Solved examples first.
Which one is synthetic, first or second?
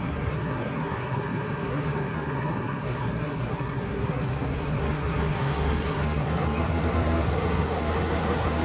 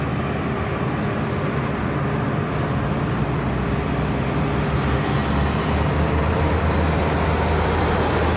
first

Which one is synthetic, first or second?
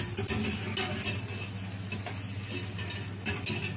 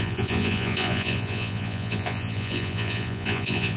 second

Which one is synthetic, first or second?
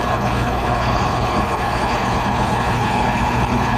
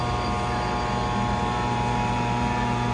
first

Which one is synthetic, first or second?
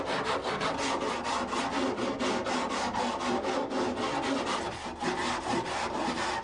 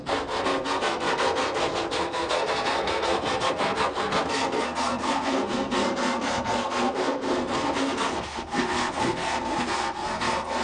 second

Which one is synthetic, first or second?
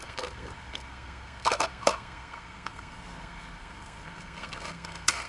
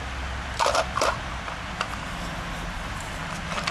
first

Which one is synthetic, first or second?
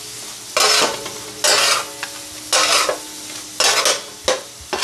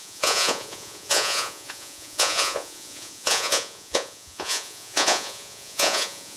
second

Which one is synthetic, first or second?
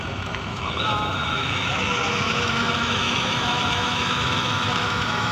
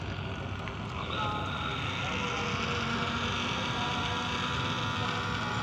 first